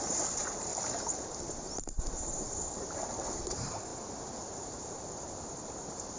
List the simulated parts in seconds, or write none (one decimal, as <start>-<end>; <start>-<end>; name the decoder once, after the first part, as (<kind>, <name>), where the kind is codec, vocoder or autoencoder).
0.0-0.7 (vocoder, BigVGAN v2); 1.4-3.9; 4.4-6.2